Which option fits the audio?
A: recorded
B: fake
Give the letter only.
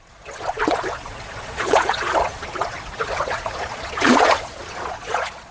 B